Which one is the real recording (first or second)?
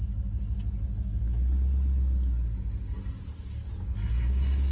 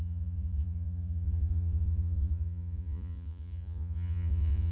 first